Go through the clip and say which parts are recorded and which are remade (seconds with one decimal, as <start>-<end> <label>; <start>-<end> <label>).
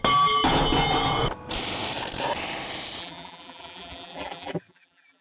0.0-3.0 recorded; 3.0-5.2 remade